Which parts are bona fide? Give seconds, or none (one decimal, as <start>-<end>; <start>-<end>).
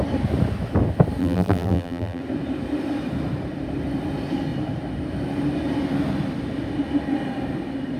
0.0-1.2; 2.2-8.0